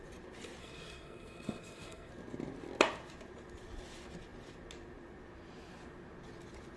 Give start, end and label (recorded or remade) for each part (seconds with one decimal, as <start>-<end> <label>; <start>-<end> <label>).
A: 0.0-0.6 recorded; 0.6-2.1 remade; 2.1-6.8 recorded